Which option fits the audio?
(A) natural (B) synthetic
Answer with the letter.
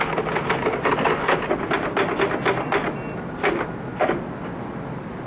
A